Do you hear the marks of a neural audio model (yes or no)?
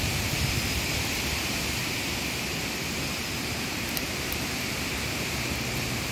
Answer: yes